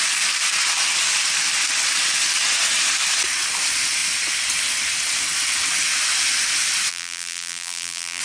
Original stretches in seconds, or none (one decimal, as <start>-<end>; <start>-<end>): 0.0-6.9